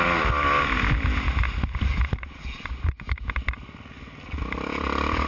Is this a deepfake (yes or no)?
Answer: no